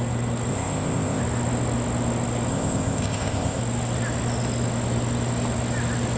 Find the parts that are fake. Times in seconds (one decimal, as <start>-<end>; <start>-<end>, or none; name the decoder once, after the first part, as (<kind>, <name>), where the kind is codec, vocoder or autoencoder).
0.5-1.2 (codec, ZipCodec); 2.5-3.6